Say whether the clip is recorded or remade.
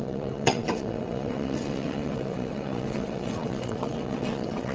remade